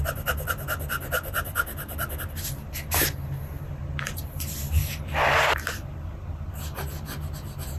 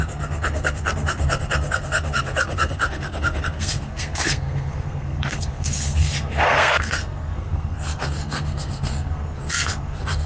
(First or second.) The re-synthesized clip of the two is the second